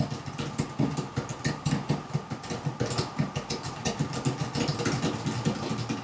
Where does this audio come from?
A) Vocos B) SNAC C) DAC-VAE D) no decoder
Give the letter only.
D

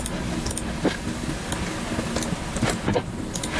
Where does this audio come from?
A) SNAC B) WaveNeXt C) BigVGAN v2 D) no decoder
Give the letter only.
D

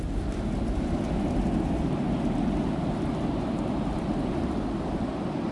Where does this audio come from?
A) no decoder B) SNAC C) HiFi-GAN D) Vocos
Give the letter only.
A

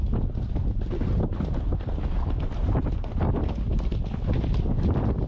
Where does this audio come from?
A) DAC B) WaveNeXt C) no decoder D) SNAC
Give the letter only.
C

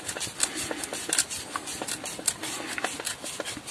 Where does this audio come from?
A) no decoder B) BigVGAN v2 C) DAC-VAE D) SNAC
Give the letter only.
A